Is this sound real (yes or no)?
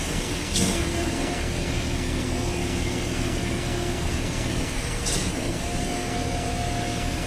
no